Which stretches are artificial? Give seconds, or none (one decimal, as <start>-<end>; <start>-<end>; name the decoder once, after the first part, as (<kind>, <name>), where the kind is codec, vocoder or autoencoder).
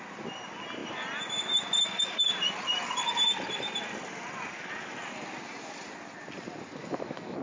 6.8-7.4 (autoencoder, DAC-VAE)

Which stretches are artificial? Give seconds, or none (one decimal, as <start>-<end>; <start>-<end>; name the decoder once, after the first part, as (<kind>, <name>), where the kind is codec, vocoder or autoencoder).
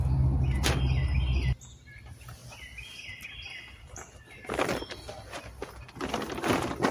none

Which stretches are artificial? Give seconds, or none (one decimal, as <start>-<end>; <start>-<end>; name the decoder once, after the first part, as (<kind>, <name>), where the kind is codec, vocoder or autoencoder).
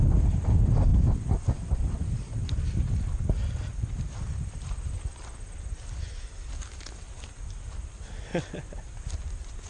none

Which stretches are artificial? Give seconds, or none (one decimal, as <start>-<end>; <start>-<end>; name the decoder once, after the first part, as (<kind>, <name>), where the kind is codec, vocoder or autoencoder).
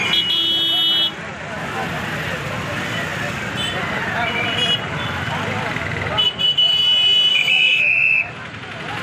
7.3-8.3 (autoencoder, DAC-VAE)